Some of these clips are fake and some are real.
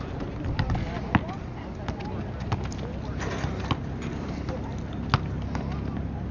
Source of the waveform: real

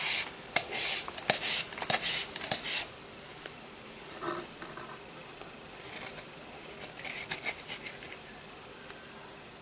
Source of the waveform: real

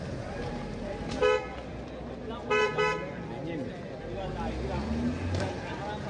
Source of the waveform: real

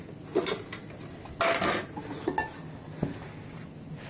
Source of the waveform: real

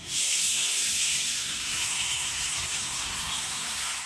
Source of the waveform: fake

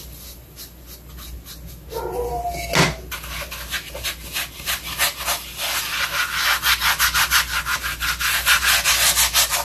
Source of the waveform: real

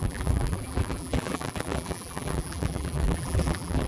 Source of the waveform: fake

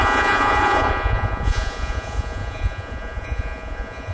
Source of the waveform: fake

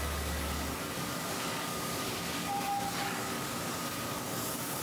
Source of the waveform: fake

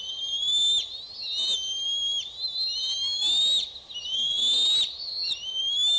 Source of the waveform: real